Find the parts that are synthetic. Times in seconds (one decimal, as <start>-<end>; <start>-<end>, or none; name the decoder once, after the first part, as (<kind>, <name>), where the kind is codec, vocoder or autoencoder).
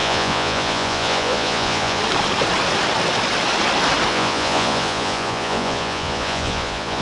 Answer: 0.0-2.0 (vocoder, Vocos); 4.1-7.0